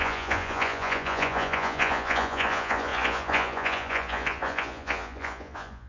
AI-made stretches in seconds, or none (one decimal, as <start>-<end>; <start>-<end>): 0.0-5.9

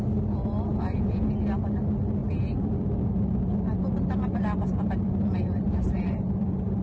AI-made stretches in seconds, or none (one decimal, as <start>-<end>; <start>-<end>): 0.7-1.3